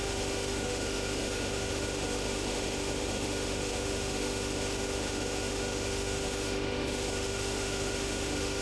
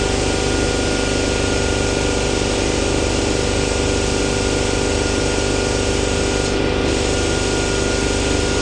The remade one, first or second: first